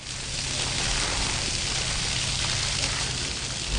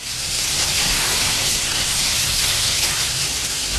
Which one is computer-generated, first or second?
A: second